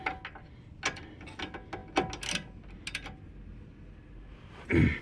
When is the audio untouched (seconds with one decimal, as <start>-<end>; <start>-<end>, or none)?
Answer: 0.0-5.0